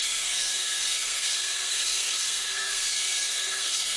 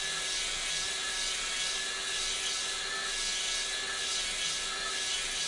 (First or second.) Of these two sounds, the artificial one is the first